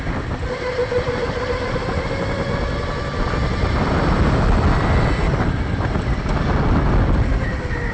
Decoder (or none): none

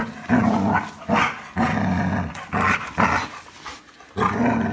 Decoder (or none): none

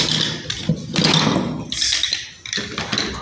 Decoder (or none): none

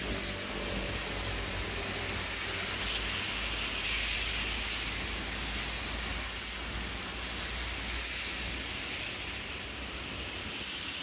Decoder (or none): none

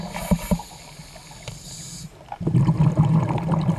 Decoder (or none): none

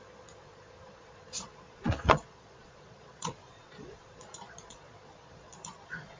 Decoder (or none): vocoder, Vocos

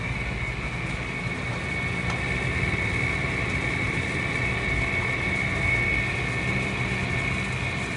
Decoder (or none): none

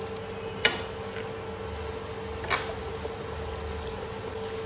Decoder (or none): none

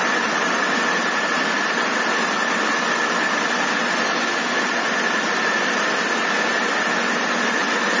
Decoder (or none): none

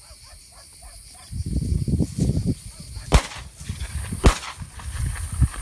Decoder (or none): none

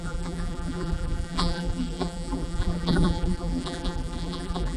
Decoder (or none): vocoder, BigVGAN v2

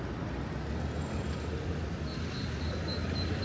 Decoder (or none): none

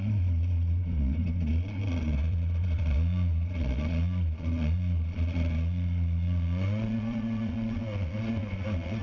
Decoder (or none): vocoder, Vocos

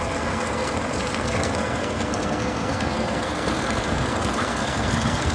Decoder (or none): codec, SNAC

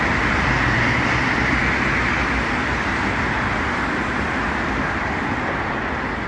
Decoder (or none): none